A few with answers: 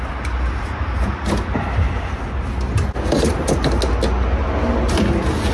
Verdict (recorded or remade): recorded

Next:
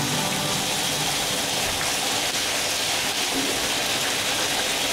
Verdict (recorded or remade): recorded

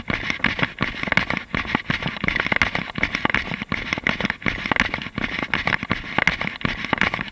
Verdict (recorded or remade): recorded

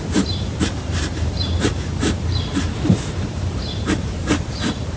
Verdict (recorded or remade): remade